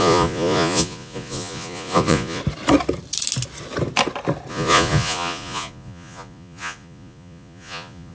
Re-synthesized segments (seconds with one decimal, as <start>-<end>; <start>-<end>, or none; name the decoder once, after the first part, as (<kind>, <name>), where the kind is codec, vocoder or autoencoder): 0.0-2.4 (vocoder, Vocos); 4.5-8.1